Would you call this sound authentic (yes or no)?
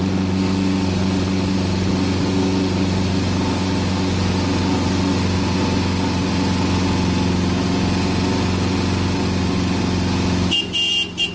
yes